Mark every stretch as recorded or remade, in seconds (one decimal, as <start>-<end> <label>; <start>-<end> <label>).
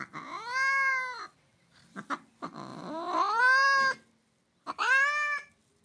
0.0-2.7 recorded; 2.7-3.4 remade; 3.4-5.8 recorded